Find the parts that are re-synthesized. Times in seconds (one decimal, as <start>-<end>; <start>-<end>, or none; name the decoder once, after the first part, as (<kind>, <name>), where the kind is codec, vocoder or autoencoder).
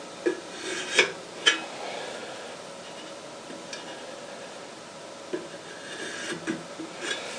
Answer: none